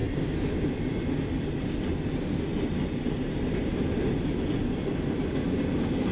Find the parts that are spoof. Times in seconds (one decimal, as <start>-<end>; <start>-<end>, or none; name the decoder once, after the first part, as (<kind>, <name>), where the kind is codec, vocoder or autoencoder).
none